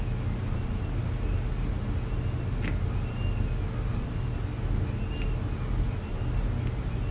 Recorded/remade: recorded